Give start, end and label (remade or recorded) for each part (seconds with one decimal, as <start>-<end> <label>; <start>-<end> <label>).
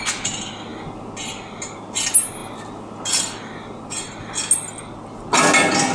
0.0-5.9 recorded